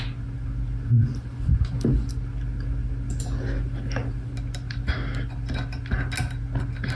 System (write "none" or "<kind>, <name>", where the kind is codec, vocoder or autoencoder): none